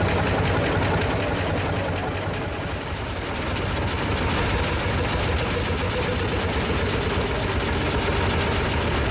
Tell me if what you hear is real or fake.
real